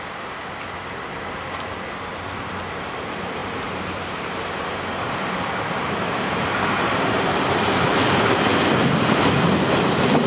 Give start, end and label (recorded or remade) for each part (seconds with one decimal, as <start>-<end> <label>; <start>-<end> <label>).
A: 0.0-3.4 recorded; 3.4-6.4 remade; 6.4-10.3 recorded